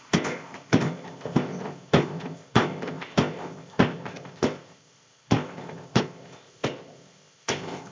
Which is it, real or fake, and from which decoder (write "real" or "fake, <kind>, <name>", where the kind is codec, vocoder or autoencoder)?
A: fake, codec, ZipCodec